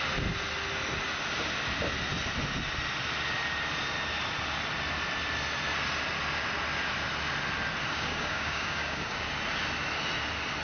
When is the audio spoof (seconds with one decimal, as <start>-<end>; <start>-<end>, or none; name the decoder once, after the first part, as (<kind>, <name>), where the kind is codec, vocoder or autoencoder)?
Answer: 7.9-9.3 (codec, DAC)